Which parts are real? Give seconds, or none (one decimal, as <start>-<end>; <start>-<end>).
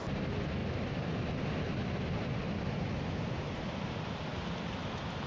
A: 0.0-5.3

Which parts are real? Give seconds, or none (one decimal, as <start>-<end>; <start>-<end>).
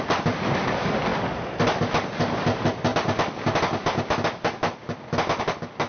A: 0.0-5.9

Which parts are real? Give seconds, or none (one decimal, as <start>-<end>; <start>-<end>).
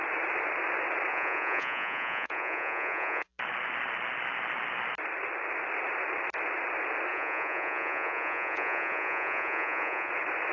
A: 0.0-1.1; 3.3-7.1; 10.1-10.5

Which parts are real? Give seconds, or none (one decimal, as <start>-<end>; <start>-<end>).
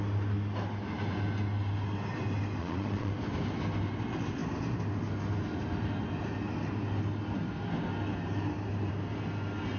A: 0.0-2.6; 3.1-9.8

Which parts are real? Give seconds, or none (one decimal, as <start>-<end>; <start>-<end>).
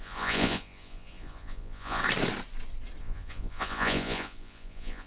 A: 2.0-3.0